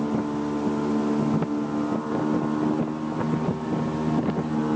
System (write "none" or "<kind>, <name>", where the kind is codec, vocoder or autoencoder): none